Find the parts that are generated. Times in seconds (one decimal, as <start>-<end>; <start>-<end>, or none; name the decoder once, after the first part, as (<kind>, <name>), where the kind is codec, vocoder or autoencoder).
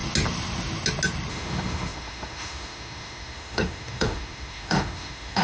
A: 1.3-5.4 (autoencoder, DAC-VAE)